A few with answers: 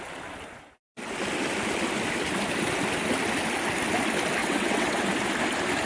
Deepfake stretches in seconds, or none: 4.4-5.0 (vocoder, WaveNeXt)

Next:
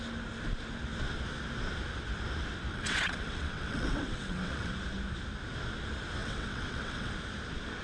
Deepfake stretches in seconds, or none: 2.7-4.7 (vocoder, WaveNeXt); 6.2-7.1

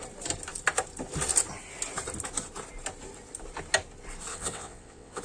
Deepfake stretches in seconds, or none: 4.3-5.2 (vocoder, WaveNeXt)

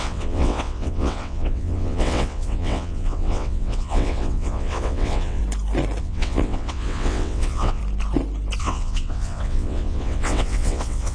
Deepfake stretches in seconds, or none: 0.0-5.4 (vocoder, WaveNeXt); 6.0-7.8; 8.6-11.1

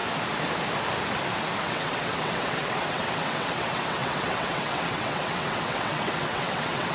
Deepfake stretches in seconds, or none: 1.6-6.9 (vocoder, WaveNeXt)